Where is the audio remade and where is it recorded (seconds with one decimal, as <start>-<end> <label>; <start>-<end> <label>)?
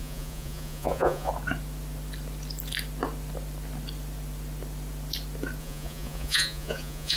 0.0-1.3 remade; 1.3-5.6 recorded; 5.6-7.2 remade